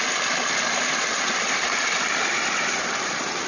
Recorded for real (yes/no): yes